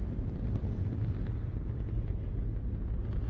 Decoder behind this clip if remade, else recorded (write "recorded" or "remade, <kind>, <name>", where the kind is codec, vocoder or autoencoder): recorded